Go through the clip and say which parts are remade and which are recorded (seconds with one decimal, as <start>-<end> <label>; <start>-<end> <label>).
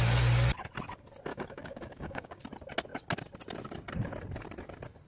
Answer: 0.0-1.3 recorded; 1.3-2.4 remade; 2.4-5.1 recorded